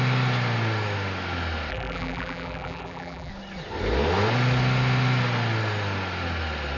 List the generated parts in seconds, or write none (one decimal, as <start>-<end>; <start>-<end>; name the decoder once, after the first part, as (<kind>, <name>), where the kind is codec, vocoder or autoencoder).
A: 1.7-3.3 (vocoder, BigVGAN v2)